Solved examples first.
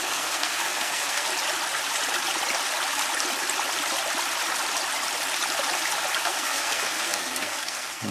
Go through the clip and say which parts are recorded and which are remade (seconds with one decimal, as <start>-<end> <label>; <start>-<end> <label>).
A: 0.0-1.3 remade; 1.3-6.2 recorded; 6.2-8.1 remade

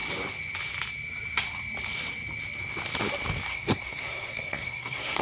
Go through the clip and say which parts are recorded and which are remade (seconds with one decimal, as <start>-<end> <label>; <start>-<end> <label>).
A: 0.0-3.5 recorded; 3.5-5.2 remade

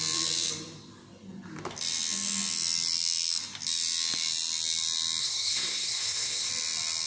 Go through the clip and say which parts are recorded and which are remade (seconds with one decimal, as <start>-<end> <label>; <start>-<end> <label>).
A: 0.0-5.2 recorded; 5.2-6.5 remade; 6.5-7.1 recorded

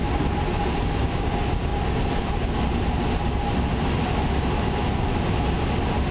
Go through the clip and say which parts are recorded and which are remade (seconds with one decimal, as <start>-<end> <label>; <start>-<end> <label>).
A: 0.0-6.1 recorded

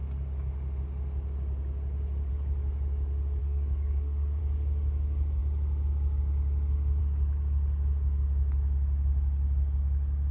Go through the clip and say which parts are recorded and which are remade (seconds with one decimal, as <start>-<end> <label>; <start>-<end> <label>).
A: 0.0-3.4 recorded; 3.4-4.4 remade; 4.4-10.3 recorded

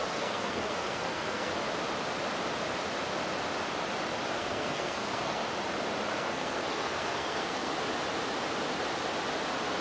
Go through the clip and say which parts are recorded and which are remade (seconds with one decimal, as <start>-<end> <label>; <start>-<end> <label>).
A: 0.0-1.5 remade; 1.5-4.3 recorded; 4.3-5.4 remade; 5.4-6.1 recorded; 6.1-7.7 remade; 7.7-9.8 recorded